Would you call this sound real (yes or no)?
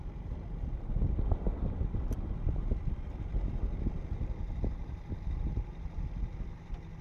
yes